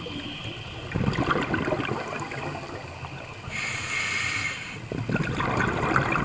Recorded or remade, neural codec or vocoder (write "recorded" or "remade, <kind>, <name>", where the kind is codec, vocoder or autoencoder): recorded